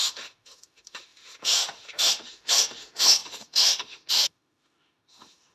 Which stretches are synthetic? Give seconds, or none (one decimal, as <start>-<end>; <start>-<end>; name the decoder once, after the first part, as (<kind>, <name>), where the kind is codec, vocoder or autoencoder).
0.0-5.5 (autoencoder, DAC-VAE)